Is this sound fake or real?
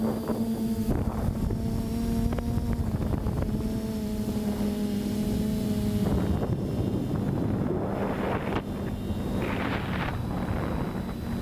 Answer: real